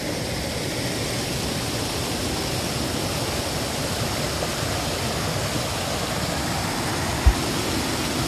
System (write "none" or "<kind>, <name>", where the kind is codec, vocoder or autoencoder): none